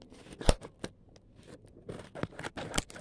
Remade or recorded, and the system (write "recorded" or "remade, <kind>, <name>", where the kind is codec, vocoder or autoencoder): recorded